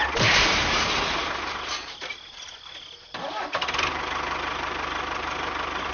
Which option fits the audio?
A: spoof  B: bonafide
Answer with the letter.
B